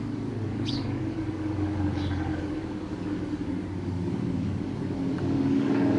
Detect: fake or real fake